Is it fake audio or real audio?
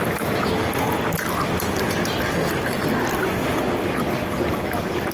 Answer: real